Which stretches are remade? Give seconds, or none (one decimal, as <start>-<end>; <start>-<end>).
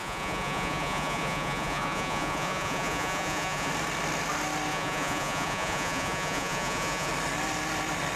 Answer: 0.0-3.7; 4.7-7.1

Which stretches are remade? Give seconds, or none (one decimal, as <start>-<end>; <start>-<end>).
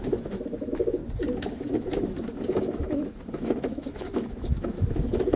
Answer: 0.0-1.0; 1.5-5.4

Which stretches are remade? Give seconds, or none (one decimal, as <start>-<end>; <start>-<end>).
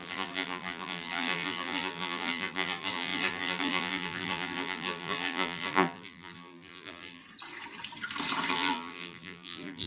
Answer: 0.0-7.2; 8.5-9.9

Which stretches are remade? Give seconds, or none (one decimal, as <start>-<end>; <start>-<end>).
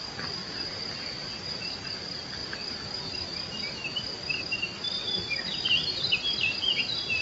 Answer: 0.0-0.4; 1.6-2.4; 4.4-7.2